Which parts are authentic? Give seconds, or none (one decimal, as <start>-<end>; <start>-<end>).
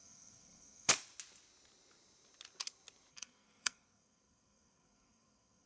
0.9-3.1